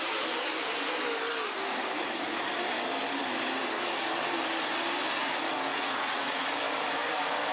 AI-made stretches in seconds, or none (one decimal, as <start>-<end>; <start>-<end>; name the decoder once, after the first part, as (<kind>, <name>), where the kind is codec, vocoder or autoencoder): 5.7-6.5 (vocoder, Vocos)